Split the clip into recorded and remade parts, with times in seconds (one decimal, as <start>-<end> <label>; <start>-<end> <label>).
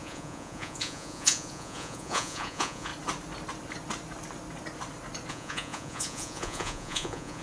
0.0-2.9 remade; 2.9-5.3 recorded; 5.3-7.4 remade